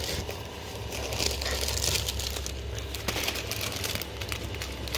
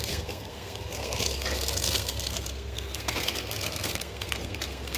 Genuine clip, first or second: first